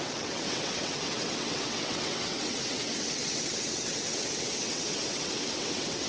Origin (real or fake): fake